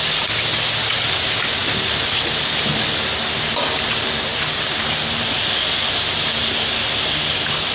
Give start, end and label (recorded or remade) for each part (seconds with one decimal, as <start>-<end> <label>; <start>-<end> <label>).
0.0-1.6 recorded; 1.6-2.6 remade; 2.6-4.3 recorded; 4.3-5.3 remade; 5.3-7.7 recorded